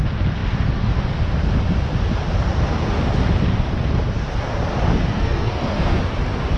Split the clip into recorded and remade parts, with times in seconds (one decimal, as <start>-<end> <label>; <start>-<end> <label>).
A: 0.0-5.1 recorded; 5.1-6.0 remade; 6.0-6.6 recorded